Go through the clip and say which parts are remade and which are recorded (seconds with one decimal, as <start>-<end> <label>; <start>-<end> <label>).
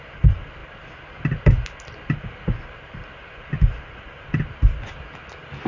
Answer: 0.0-5.7 recorded